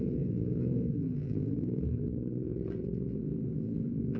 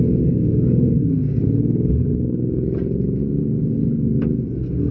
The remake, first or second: first